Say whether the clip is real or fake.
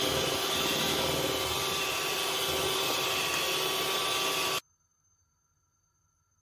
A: real